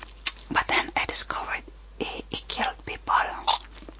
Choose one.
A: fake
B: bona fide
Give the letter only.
B